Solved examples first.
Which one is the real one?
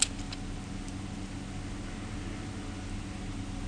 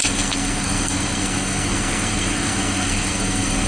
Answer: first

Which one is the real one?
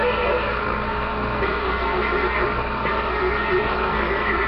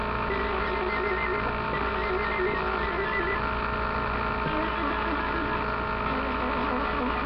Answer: second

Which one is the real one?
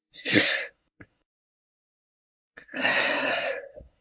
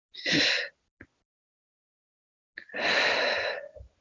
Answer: second